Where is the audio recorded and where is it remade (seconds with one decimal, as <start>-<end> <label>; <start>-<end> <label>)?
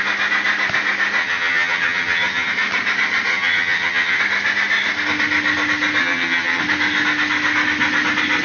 0.0-1.2 recorded; 1.2-2.5 remade; 2.5-3.3 recorded; 3.3-4.2 remade; 4.2-6.0 recorded; 6.0-6.6 remade; 6.6-8.4 recorded